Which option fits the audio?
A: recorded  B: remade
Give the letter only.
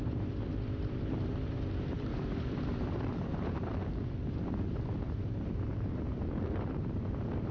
B